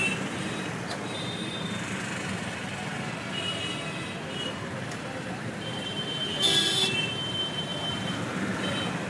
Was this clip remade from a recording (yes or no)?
no